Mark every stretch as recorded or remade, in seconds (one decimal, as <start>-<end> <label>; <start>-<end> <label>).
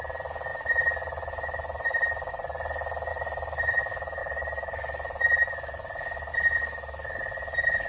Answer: 0.0-7.9 recorded